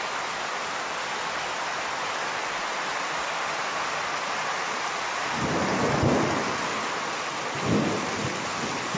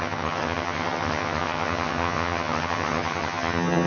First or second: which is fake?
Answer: second